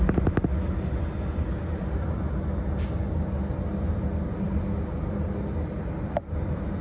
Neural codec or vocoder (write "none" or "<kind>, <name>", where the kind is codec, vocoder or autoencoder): none